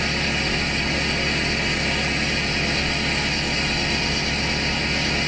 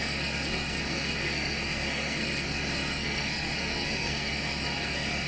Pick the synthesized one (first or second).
second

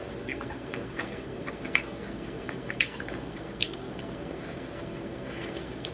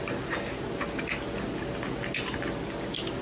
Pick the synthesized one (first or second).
first